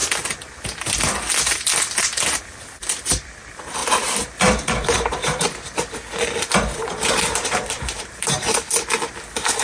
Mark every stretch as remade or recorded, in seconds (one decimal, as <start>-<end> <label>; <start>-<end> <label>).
0.0-3.8 recorded; 3.8-5.9 remade; 5.9-6.8 recorded; 6.8-8.3 remade; 8.3-9.6 recorded